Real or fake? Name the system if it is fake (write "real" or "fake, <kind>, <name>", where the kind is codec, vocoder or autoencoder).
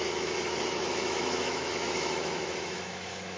fake, autoencoder, DAC-VAE